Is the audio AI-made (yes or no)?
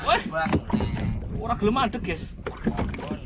no